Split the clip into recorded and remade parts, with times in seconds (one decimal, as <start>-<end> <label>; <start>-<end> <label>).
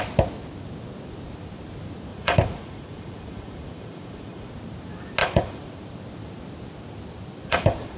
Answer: 0.0-2.1 recorded; 2.1-4.5 remade; 4.5-5.2 recorded; 5.2-5.8 remade; 5.8-7.5 recorded; 7.5-8.0 remade